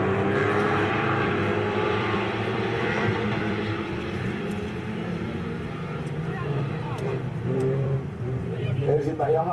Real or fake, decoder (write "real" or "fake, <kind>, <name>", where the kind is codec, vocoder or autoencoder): fake, vocoder, BigVGAN v2